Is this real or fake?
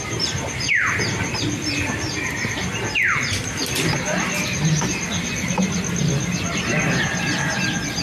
real